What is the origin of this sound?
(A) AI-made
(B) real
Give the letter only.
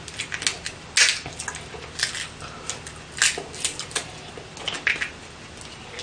B